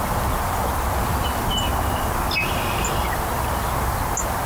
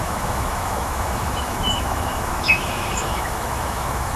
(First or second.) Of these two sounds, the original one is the first